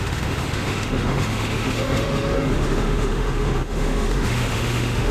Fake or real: fake